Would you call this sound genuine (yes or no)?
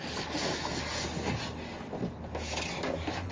yes